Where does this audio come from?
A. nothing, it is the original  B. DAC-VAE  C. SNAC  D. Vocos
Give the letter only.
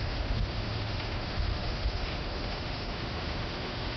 B